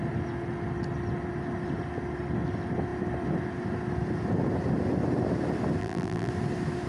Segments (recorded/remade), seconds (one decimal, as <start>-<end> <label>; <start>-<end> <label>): 0.0-5.8 recorded; 5.8-6.3 remade; 6.3-6.9 recorded